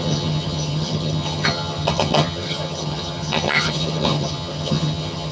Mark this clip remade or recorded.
remade